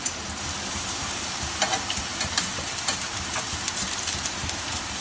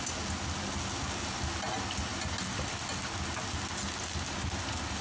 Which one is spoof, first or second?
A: first